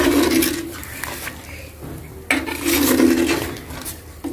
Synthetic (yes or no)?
no